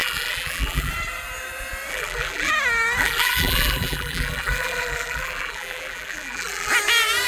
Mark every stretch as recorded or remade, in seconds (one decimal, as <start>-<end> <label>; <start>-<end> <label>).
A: 0.0-0.9 remade; 0.9-1.9 recorded; 1.9-2.5 remade; 2.5-3.0 recorded; 3.0-6.7 remade; 6.7-7.3 recorded